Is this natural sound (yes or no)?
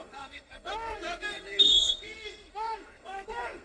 no